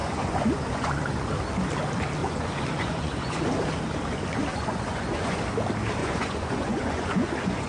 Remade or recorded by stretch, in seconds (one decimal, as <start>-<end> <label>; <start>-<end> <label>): 0.0-1.3 remade; 1.3-2.2 recorded; 2.2-3.4 remade; 3.4-4.5 recorded; 4.5-5.4 remade; 5.4-6.0 recorded; 6.0-7.7 remade